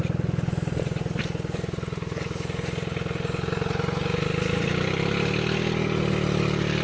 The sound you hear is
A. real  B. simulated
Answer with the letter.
A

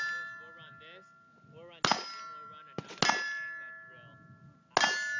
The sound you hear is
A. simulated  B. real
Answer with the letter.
B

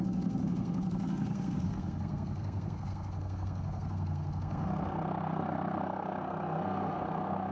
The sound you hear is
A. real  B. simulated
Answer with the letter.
B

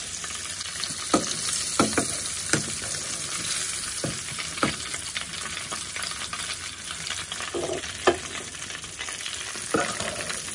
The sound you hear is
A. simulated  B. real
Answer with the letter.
B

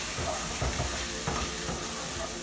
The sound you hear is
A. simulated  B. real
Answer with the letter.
B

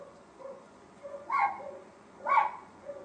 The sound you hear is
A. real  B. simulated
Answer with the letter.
B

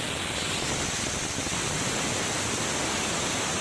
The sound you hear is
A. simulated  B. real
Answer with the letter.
B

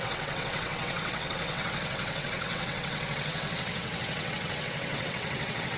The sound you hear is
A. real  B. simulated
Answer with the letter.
B